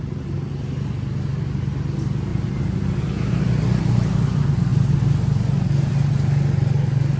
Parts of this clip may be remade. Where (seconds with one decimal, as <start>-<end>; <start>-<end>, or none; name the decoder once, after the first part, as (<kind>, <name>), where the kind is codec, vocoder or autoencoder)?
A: none